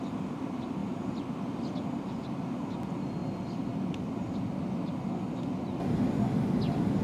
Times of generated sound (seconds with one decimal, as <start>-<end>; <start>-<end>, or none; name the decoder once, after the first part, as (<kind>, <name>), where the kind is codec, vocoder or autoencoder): none